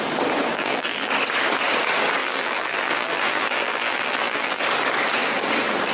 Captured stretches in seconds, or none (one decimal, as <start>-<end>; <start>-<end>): 0.0-0.5; 1.1-2.2; 4.6-5.9